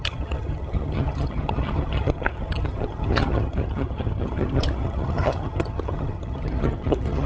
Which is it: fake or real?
fake